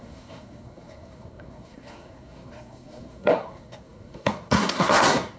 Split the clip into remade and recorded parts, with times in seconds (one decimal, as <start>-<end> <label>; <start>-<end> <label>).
0.0-5.4 remade